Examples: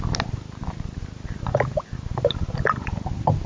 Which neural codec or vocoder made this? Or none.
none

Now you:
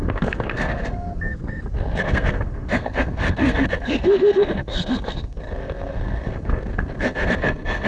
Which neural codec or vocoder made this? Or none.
codec, SNAC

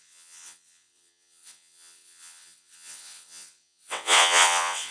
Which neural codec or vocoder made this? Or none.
vocoder, WaveNeXt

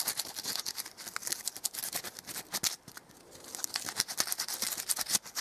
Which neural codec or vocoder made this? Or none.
none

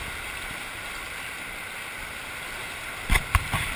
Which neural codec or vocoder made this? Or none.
none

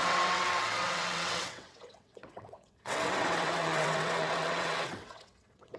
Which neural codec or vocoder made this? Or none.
vocoder, WaveNeXt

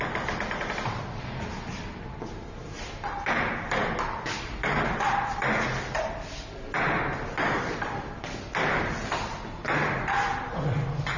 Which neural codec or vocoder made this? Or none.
none